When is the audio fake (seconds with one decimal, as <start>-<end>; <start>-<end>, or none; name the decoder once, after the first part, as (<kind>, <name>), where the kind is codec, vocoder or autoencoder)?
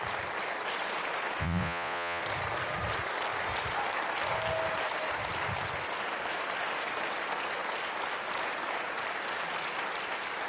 1.4-2.2 (vocoder, Vocos)